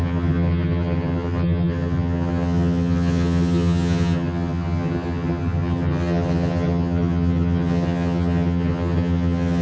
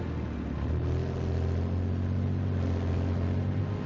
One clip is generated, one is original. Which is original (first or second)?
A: second